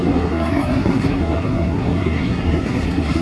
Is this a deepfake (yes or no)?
yes